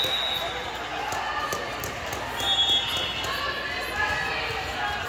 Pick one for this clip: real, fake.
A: real